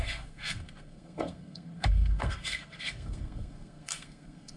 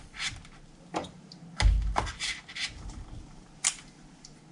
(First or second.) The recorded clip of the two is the second